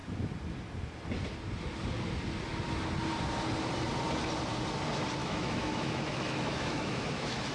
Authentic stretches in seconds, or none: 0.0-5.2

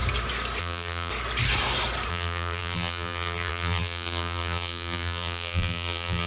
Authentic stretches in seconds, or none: 0.0-0.6; 1.1-2.1

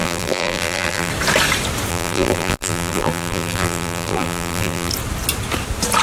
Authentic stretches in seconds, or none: 1.1-1.9; 4.9-6.0

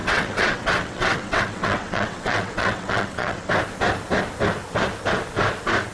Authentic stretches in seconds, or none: 3.5-5.9

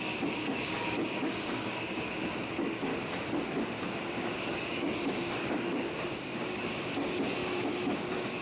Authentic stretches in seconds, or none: 2.9-3.9